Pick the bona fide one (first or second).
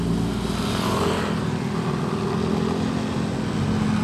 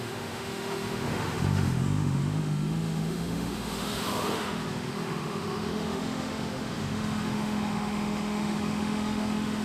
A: first